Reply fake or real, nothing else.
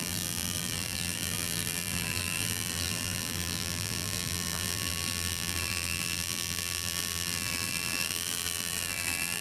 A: fake